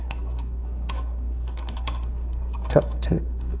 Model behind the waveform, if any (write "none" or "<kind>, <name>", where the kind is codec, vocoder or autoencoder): codec, SNAC